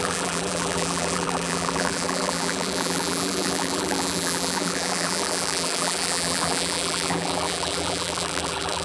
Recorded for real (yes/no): no